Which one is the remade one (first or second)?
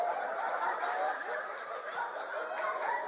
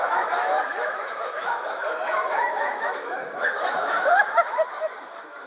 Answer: second